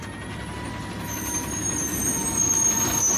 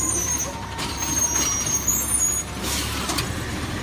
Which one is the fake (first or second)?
second